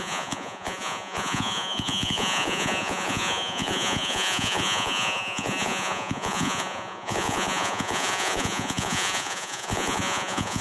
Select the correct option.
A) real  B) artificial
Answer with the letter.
B